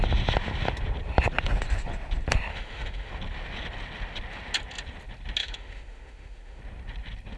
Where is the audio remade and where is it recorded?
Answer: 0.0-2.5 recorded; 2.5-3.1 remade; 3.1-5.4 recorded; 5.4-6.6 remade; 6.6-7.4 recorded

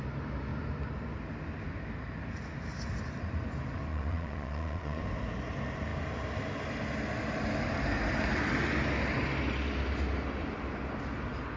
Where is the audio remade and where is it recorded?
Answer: 0.0-3.9 recorded; 3.9-5.0 remade; 5.0-11.6 recorded

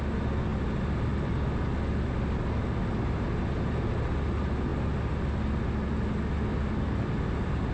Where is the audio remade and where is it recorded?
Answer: 0.0-7.7 recorded

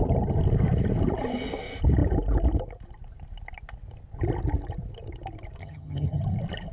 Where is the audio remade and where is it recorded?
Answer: 0.0-5.6 recorded; 5.6-6.2 remade; 6.2-6.7 recorded

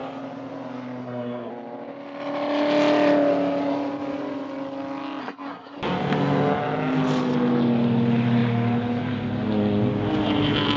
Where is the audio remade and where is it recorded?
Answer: 0.0-1.0 recorded; 1.0-1.5 remade; 1.5-5.2 recorded; 5.2-5.8 remade; 5.8-10.8 recorded